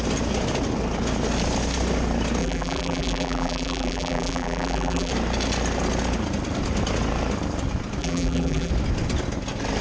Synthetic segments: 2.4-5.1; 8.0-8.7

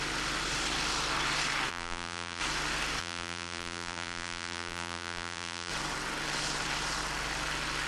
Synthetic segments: 1.7-2.4; 3.0-5.7

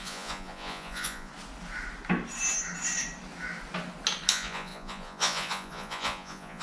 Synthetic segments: 0.0-1.3; 4.3-6.6

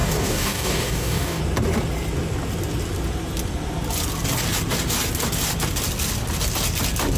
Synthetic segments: 0.0-1.4

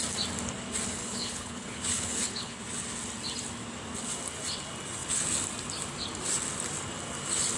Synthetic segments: 1.0-2.6

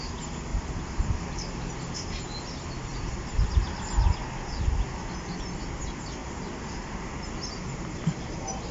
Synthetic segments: 0.5-1.8; 2.9-5.0; 6.2-7.0

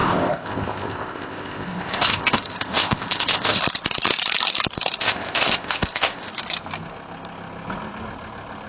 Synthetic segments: 0.0-3.6; 5.0-6.3

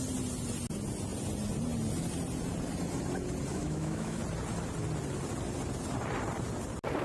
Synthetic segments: 3.5-4.2